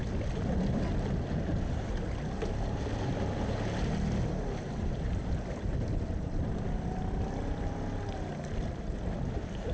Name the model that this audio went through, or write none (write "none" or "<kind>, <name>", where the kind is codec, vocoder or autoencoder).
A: none